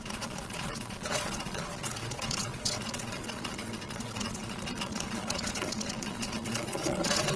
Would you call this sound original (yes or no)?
no